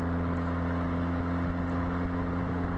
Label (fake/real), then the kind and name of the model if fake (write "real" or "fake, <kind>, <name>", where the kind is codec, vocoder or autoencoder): real